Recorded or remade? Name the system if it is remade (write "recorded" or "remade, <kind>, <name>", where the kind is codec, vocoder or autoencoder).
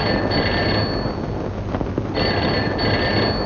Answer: recorded